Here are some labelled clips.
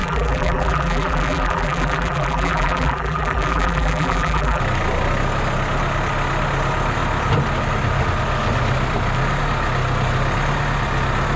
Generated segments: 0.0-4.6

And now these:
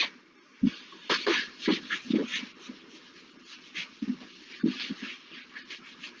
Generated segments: none

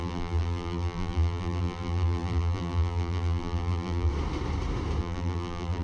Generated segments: 0.0-4.1; 5.0-5.8